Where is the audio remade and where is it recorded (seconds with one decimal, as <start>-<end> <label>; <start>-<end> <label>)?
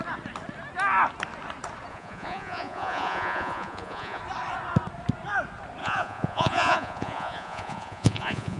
0.0-1.9 recorded; 1.9-4.2 remade; 4.2-5.8 recorded; 5.8-8.6 remade